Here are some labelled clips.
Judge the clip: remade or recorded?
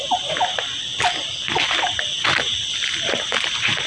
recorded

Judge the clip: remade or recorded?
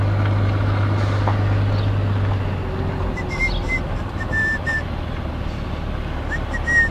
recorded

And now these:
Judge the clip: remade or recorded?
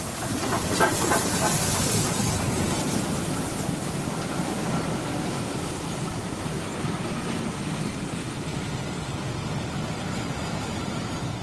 recorded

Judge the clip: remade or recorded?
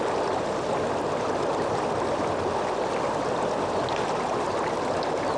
recorded